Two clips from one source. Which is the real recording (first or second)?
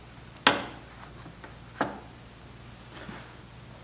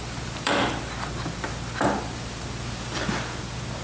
first